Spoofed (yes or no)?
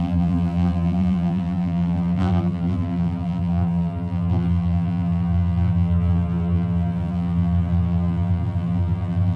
yes